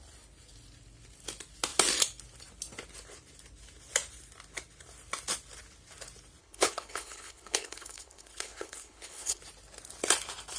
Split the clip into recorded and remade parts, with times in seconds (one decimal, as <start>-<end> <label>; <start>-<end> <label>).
0.0-6.4 recorded; 6.4-9.4 remade; 9.4-10.6 recorded